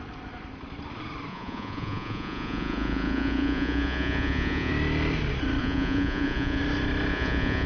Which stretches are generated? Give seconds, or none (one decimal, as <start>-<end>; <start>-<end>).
1.3-4.7; 5.6-6.6; 7.1-7.7